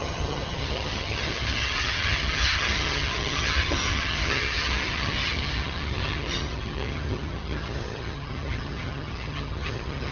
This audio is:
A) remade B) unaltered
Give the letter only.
A